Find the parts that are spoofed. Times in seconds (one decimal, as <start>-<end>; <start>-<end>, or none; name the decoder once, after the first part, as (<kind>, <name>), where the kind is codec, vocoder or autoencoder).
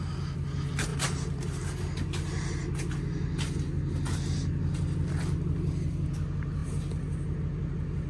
none